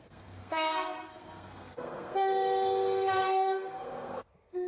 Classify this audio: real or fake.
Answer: fake